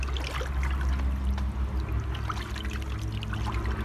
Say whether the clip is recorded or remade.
recorded